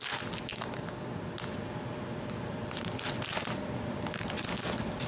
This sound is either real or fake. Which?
real